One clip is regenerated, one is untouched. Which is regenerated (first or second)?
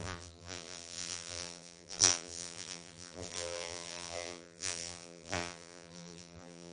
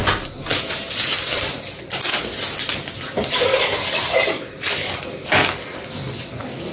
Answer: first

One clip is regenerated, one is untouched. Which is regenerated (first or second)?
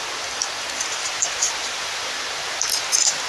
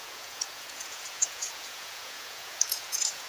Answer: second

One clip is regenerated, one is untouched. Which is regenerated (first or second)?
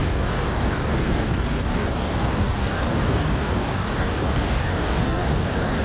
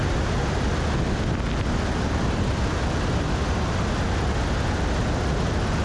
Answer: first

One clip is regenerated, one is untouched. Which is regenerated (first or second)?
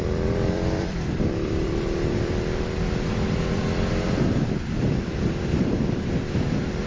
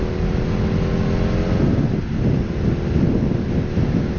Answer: first